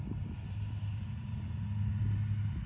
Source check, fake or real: real